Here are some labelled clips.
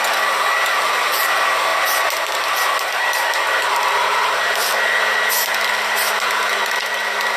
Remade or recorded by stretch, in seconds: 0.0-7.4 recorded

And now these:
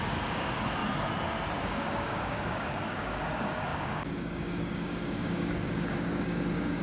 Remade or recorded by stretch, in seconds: 0.0-0.8 remade; 0.8-1.6 recorded; 1.6-6.8 remade

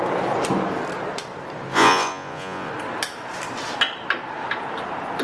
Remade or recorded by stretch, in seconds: 0.0-1.7 recorded; 1.7-2.7 remade; 2.7-5.2 recorded

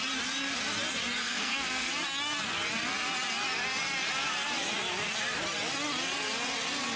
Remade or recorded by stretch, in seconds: 0.0-1.2 recorded; 1.2-1.9 remade; 1.9-7.0 recorded

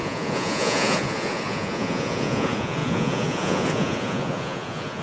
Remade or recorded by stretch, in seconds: 0.0-5.0 remade

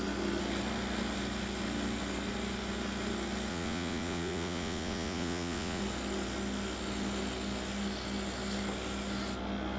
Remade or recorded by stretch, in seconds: 0.0-3.5 recorded; 3.5-5.8 remade; 5.8-9.8 recorded

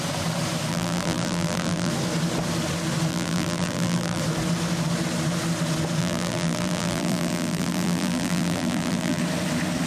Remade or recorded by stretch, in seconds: 0.0-0.7 recorded; 0.7-1.9 remade; 1.9-3.1 recorded; 3.1-4.2 remade; 4.2-6.0 recorded; 6.0-9.2 remade; 9.2-9.9 recorded